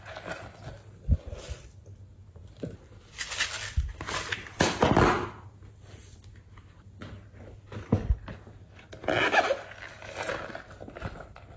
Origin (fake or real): real